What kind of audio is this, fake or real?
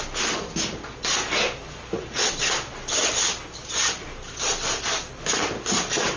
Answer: real